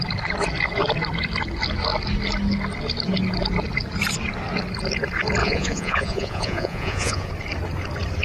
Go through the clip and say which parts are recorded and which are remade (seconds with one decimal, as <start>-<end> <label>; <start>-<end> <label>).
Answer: 0.0-5.4 recorded; 5.4-7.3 remade; 7.3-8.2 recorded